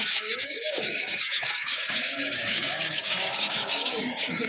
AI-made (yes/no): yes